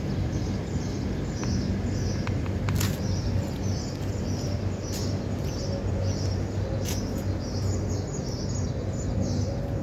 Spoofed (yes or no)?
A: no